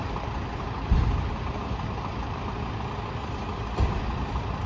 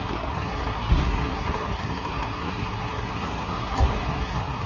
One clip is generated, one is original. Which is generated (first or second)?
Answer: second